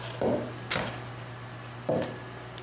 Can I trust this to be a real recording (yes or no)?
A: yes